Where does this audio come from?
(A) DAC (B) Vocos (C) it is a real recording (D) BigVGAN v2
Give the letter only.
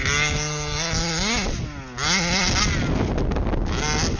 C